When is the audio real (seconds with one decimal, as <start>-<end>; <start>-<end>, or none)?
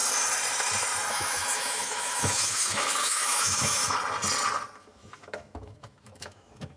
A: 0.0-1.1; 3.8-4.8